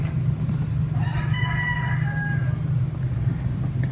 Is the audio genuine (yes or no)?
yes